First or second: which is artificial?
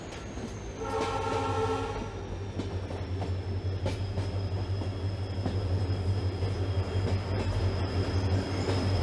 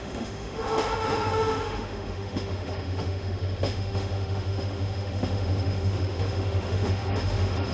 second